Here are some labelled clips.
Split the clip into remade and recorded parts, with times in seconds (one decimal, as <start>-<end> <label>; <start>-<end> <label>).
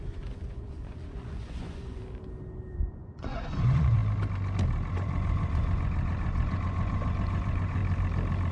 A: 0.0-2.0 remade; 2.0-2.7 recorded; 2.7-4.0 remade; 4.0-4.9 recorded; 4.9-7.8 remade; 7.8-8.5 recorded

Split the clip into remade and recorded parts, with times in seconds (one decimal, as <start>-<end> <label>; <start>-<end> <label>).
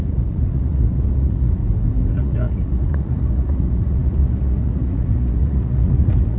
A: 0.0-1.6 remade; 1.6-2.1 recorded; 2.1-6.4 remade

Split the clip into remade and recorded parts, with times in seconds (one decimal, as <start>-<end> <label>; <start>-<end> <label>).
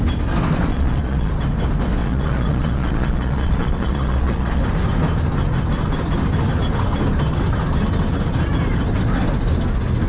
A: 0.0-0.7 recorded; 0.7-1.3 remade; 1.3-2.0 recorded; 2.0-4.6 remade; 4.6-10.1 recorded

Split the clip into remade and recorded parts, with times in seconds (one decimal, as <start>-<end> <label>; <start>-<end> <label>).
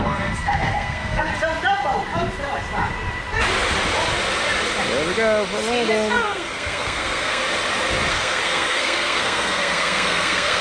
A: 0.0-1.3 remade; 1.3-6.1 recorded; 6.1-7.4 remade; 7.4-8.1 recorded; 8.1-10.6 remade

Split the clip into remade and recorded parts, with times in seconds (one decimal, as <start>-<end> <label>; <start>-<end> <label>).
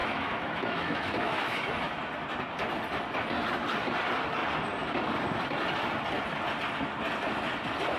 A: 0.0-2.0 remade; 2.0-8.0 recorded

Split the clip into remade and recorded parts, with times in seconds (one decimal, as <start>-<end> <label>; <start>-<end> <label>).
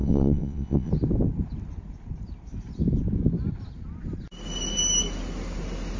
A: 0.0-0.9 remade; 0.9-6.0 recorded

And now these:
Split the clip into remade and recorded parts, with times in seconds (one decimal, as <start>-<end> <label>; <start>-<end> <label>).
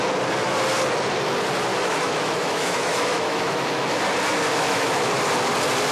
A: 0.0-1.7 recorded; 1.7-4.0 remade; 4.0-4.5 recorded; 4.5-5.0 remade; 5.0-5.9 recorded